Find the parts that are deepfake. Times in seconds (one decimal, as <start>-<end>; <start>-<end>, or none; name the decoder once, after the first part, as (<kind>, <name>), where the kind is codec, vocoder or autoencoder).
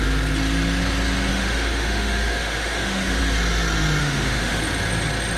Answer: 1.3-3.2 (autoencoder, DAC-VAE); 4.0-4.6